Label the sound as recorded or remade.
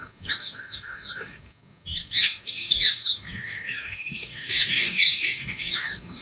remade